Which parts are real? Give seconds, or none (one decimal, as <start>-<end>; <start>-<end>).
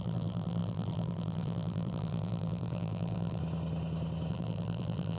3.4-4.3